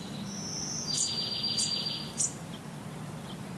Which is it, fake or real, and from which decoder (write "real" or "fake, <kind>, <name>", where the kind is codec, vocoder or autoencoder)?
real